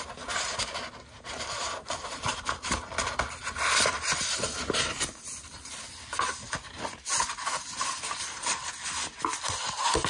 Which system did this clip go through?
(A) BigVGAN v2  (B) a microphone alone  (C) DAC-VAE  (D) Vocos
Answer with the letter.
B